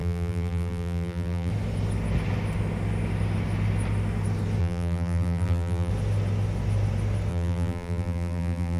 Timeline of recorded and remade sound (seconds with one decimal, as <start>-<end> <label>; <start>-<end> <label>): 0.0-1.5 remade; 1.5-4.6 recorded; 4.6-5.9 remade; 5.9-7.3 recorded; 7.3-8.8 remade